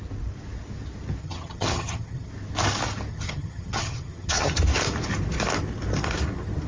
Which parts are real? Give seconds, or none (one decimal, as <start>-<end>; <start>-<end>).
0.0-1.2; 2.3-3.1; 4.5-6.7